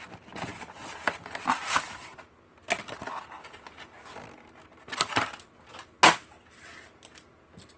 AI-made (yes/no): no